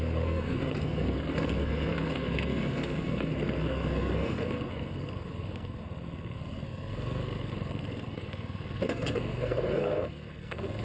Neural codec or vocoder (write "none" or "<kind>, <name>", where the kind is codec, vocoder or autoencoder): codec, SNAC